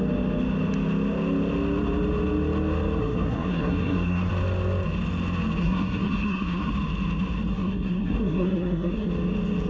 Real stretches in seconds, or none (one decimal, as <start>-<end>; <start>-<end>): 0.0-3.0; 4.3-5.6; 6.7-7.5; 9.1-9.7